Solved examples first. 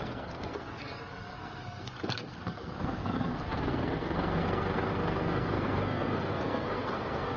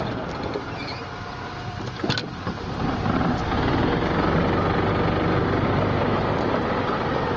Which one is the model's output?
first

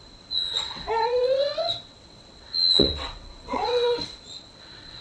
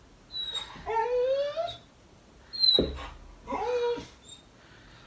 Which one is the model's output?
first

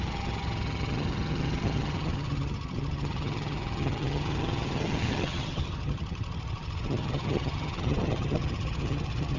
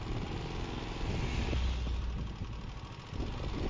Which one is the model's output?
first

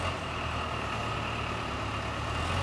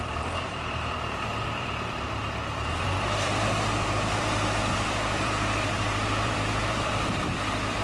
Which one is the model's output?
second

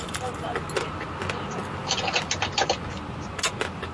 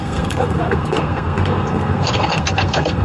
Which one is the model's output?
second